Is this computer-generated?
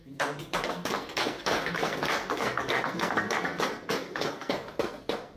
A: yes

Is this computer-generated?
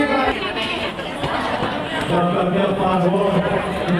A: yes